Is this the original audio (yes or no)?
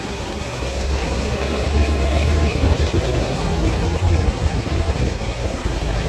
no